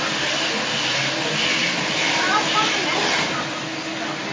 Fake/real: real